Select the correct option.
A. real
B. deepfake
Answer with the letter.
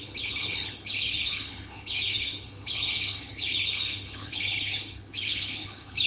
B